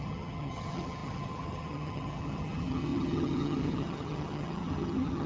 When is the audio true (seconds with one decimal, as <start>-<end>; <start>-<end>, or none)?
none